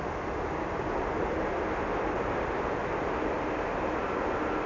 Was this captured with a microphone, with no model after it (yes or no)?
yes